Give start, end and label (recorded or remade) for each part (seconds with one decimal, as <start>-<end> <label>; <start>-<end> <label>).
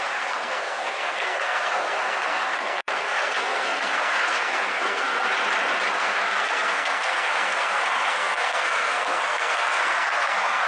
0.0-5.3 remade; 5.3-5.9 recorded; 5.9-10.7 remade